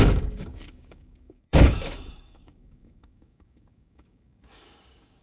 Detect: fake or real fake